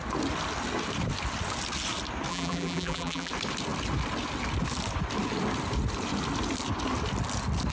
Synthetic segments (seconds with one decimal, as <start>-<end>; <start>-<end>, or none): 2.3-3.3